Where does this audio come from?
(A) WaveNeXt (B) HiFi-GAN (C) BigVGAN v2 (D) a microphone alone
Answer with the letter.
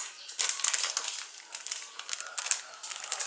D